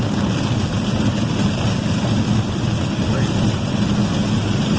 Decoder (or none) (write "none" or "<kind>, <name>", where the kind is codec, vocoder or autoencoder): none